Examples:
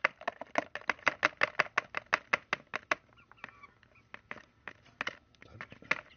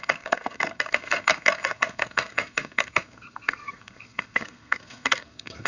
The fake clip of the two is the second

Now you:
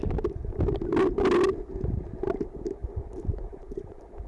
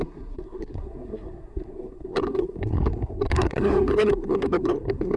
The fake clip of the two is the second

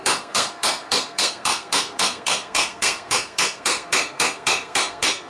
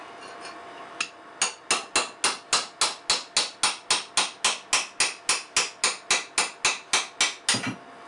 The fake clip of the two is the first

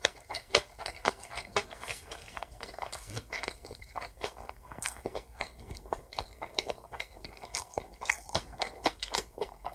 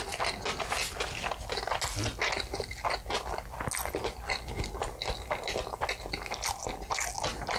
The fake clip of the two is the first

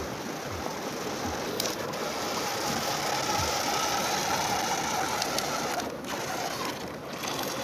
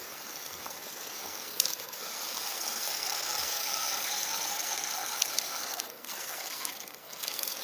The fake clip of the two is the second